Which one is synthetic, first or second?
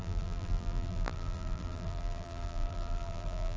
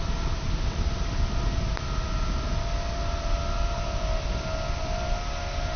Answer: first